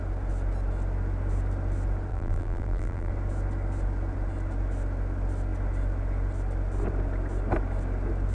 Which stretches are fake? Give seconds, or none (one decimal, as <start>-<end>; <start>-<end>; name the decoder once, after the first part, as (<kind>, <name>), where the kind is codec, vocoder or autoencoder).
2.1-3.1 (vocoder, BigVGAN v2)

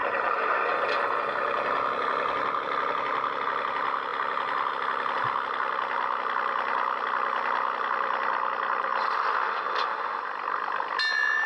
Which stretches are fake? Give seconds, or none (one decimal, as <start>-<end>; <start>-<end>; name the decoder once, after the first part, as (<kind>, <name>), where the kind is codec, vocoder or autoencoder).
0.0-0.6 (vocoder, BigVGAN v2)

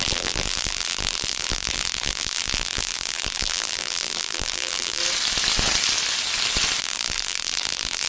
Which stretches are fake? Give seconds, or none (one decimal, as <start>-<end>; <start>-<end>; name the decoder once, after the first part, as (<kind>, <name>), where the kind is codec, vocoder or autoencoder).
0.0-5.0 (vocoder, BigVGAN v2); 6.8-8.1

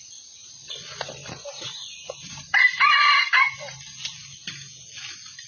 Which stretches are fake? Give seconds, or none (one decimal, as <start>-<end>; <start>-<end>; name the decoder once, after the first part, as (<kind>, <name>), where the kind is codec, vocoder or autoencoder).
1.2-3.8 (vocoder, BigVGAN v2)

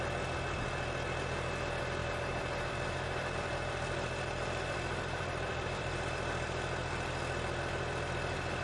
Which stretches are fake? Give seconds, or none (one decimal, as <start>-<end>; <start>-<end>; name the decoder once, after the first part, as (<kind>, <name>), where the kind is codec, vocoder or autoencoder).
2.0-6.0 (vocoder, BigVGAN v2)

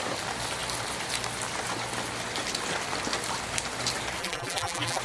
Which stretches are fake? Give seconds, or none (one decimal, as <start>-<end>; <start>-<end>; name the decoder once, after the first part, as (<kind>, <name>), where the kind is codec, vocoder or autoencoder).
4.2-5.0 (vocoder, BigVGAN v2)

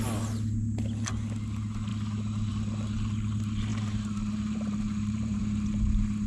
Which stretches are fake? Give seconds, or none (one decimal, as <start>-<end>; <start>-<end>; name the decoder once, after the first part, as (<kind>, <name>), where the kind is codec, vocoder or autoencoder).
3.7-5.4 (vocoder, BigVGAN v2)